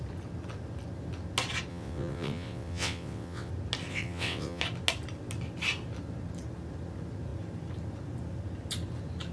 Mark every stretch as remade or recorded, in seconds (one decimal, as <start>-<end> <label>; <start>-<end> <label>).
0.0-1.7 recorded; 1.7-3.5 remade; 3.5-3.9 recorded; 3.9-4.6 remade; 4.6-9.3 recorded